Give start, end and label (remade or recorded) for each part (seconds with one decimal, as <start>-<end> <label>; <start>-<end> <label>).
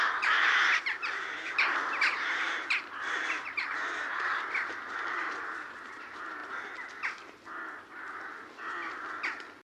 0.0-6.4 remade; 6.4-9.6 recorded